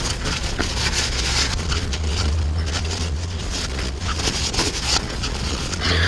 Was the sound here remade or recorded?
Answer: remade